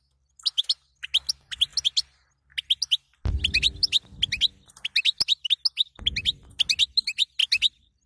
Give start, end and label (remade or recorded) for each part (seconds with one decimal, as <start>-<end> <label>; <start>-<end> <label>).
0.0-8.1 recorded